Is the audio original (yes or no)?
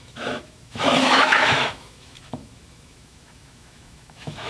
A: no